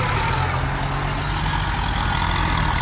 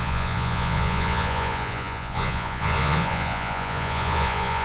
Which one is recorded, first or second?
first